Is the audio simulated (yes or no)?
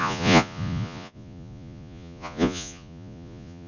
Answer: yes